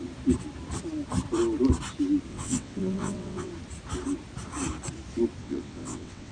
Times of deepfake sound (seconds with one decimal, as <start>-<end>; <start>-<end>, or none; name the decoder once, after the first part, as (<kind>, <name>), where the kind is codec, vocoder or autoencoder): 2.3-3.5 (vocoder, WaveNeXt); 5.4-6.3